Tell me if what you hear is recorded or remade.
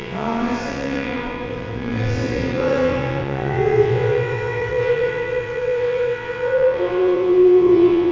remade